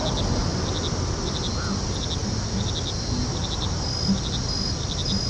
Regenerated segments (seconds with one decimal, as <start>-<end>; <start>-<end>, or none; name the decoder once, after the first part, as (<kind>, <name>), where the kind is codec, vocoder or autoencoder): none